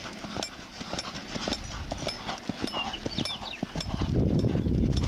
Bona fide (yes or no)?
yes